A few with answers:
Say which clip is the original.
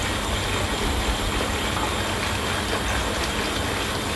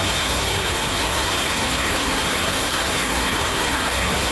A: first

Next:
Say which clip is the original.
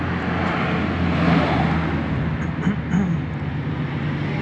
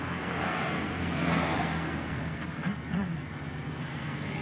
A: first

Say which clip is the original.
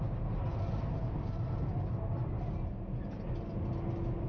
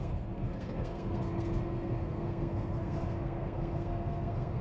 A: first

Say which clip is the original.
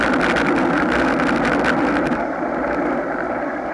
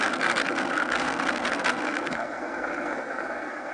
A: first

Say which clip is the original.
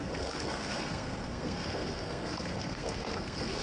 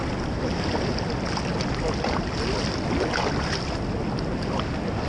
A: second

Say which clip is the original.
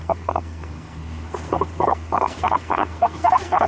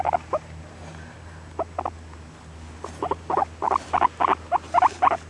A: second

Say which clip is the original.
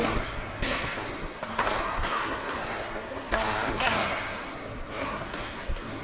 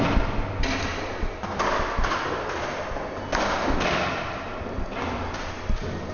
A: second